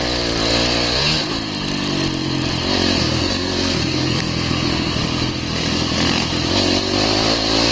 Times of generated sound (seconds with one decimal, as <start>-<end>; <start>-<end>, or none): 3.0-5.0